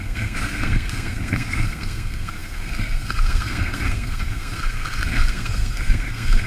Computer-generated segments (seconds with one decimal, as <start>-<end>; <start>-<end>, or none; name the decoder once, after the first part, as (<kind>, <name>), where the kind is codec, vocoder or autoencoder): 0.0-6.5 (codec, SNAC)